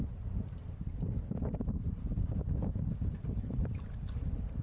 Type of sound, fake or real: fake